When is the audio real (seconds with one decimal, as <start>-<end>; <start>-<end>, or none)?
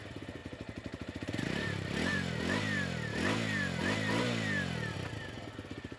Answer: 0.0-0.4; 1.9-6.0